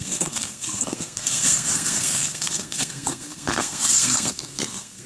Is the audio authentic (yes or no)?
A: no